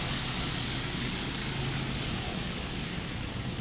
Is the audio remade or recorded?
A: remade